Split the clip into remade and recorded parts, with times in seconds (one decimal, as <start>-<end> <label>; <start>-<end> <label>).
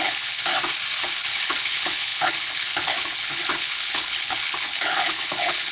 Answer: 0.0-0.5 remade; 0.5-1.2 recorded; 1.2-5.7 remade